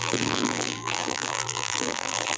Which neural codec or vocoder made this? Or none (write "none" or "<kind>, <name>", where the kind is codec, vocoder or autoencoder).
vocoder, BigVGAN v2